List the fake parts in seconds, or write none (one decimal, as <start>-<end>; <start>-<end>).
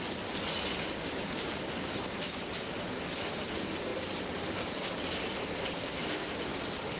none